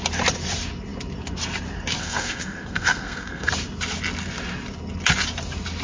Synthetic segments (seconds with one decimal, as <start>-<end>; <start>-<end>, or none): 2.0-3.5